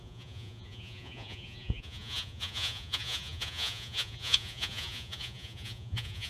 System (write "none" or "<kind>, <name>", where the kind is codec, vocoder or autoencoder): vocoder, Vocos